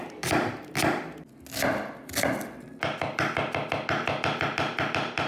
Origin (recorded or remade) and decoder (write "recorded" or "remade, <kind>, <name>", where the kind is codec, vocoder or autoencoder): recorded